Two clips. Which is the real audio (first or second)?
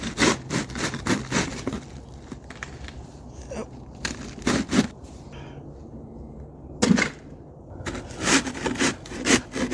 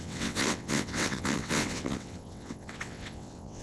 first